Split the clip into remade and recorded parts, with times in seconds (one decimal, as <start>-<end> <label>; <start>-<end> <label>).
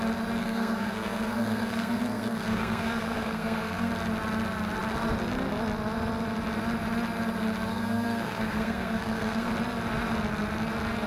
0.0-0.4 recorded; 0.4-3.9 remade; 3.9-7.7 recorded; 7.7-9.5 remade; 9.5-11.1 recorded